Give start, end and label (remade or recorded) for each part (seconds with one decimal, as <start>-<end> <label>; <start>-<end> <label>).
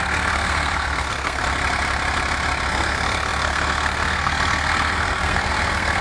0.0-1.4 remade; 1.4-2.7 recorded; 2.7-6.0 remade